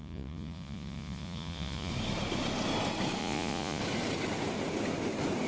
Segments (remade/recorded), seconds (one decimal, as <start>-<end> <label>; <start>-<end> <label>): 0.0-1.9 remade; 1.9-3.2 recorded; 3.2-3.8 remade; 3.8-5.5 recorded